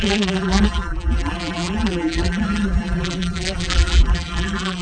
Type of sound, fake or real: fake